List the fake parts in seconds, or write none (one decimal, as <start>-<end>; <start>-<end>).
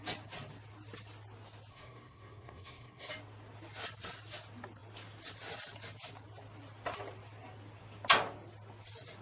1.7-3.1